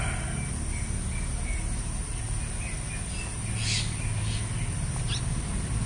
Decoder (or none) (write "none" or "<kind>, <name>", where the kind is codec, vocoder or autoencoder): none